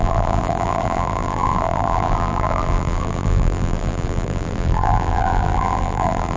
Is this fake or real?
fake